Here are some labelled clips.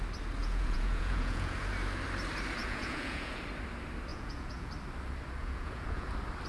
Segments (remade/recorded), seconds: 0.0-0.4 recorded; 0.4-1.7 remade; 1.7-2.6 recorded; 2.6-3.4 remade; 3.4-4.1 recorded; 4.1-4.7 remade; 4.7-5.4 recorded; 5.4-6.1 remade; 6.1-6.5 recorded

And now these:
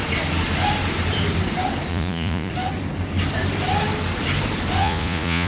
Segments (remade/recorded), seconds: 0.0-1.9 recorded; 1.9-2.5 remade; 2.5-4.8 recorded; 4.8-5.5 remade

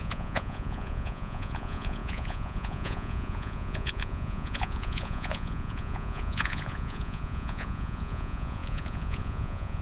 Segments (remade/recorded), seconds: 0.0-9.8 remade

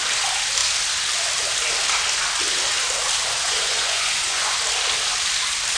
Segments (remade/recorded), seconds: 0.0-3.4 recorded; 3.4-4.6 remade; 4.6-5.8 recorded

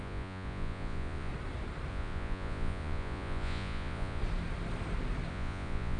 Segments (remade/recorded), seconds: 0.0-1.3 remade; 1.3-1.9 recorded; 1.9-4.2 remade; 4.2-5.3 recorded; 5.3-6.0 remade